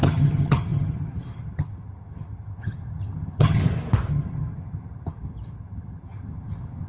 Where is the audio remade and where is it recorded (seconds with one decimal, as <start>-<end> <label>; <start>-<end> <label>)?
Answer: 0.0-3.6 remade; 3.6-4.1 recorded; 4.1-6.9 remade